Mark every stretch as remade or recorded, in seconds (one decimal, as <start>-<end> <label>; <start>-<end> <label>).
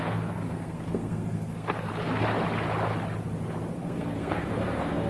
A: 0.0-1.9 remade; 1.9-3.7 recorded; 3.7-5.1 remade